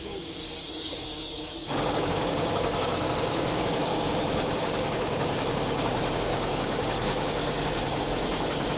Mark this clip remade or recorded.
remade